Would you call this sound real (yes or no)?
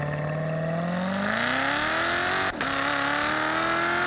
yes